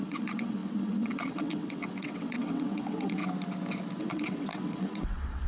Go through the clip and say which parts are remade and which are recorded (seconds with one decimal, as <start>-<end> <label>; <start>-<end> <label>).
0.0-3.2 remade; 3.2-4.0 recorded; 4.0-5.5 remade